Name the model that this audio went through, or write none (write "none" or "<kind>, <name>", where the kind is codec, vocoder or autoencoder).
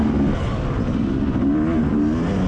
none